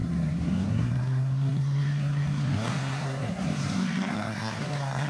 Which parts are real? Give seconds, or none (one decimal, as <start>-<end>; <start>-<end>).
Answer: none

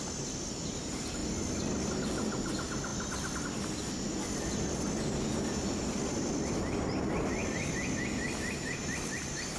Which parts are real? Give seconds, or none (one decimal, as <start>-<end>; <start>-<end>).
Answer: 0.0-9.6